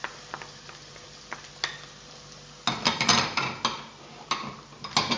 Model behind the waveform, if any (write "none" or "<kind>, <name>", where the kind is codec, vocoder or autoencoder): none